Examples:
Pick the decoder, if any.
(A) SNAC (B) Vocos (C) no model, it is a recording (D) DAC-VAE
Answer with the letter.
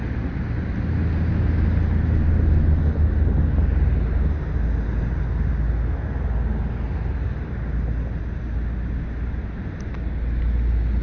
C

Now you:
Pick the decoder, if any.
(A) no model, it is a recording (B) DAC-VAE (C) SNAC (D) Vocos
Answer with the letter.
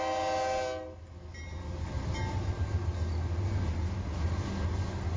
A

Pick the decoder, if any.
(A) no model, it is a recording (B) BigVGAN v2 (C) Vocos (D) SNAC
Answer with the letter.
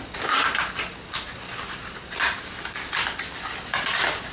A